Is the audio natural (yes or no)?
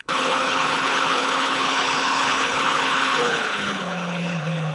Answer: no